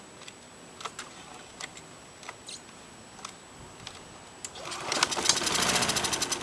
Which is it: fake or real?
real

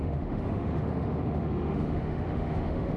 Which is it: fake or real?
fake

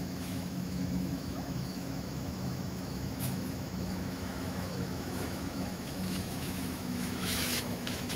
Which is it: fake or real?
fake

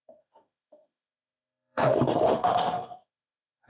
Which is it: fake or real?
fake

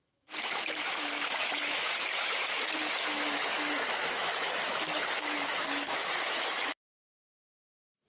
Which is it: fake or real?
fake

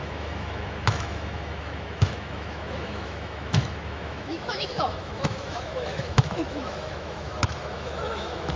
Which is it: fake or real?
fake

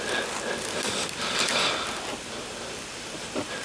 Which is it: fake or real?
real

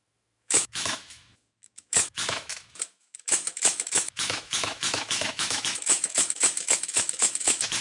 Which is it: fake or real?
fake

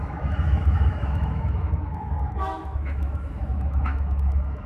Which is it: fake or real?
fake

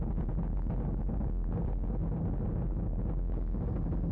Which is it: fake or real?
real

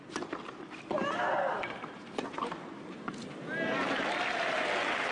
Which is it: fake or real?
real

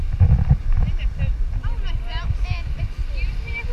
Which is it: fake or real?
real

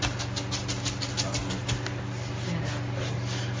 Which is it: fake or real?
real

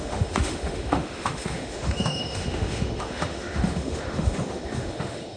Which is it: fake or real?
fake